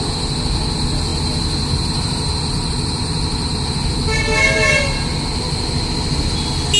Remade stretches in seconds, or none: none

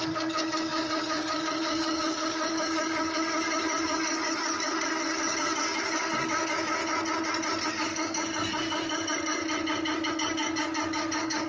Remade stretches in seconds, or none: 0.0-6.8 (codec, DAC); 7.7-9.4; 10.1-11.5

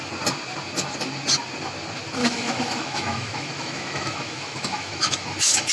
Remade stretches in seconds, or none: 2.2-5.7 (autoencoder, DAC-VAE)

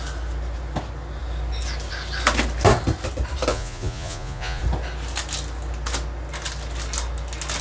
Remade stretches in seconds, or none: 3.5-4.6 (vocoder, Vocos)

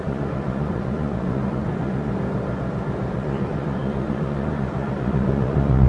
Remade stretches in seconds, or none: 0.0-2.1 (vocoder, Vocos); 3.1-5.9